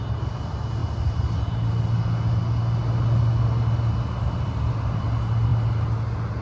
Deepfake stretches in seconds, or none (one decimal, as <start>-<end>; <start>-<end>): none